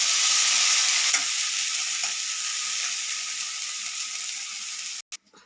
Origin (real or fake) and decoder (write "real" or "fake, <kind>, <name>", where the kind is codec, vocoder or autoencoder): real